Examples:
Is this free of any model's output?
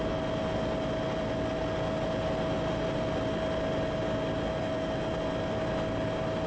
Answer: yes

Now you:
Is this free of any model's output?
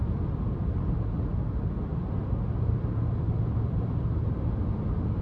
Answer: yes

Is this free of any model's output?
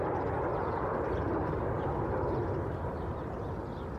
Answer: yes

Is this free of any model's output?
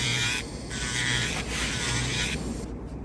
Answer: no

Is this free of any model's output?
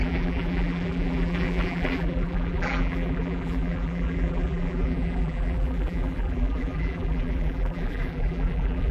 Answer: no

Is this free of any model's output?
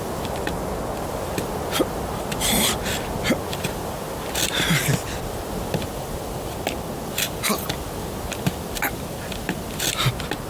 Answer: yes